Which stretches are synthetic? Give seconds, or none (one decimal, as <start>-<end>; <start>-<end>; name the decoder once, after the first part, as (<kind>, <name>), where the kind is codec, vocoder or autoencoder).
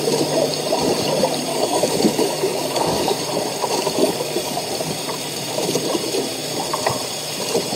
1.5-3.2 (codec, DAC); 4.0-4.6